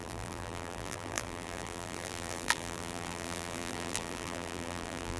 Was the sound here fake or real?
fake